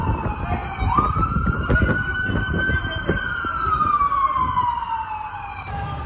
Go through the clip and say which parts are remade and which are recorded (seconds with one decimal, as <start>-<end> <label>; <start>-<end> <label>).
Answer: 0.0-6.1 recorded